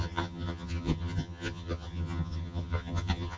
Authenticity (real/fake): fake